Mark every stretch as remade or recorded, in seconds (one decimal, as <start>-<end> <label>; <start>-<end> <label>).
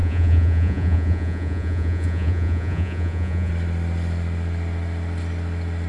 0.0-3.5 remade; 3.5-5.9 recorded